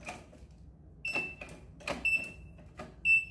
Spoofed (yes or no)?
no